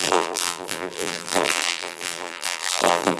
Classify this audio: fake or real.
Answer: fake